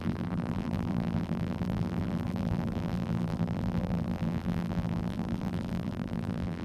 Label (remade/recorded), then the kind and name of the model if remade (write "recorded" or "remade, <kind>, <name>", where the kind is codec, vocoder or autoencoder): remade, vocoder, BigVGAN v2